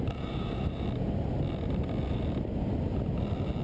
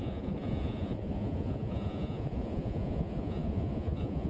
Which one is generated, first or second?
second